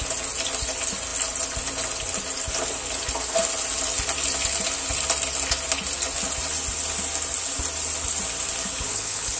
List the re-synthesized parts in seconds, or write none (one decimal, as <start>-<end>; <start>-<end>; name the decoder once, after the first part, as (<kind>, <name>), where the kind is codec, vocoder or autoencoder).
8.9-9.4 (codec, HILCodec)